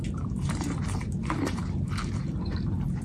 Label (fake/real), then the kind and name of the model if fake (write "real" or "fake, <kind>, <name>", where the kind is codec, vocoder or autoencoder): fake, vocoder, BigVGAN v2